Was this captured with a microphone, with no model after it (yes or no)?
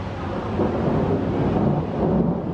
yes